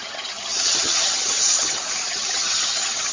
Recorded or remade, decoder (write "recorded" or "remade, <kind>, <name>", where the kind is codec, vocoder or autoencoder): remade, vocoder, HiFi-GAN